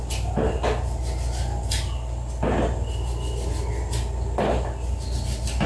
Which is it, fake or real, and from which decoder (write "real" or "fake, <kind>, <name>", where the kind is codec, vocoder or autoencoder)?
real